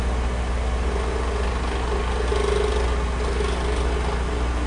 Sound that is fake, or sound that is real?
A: real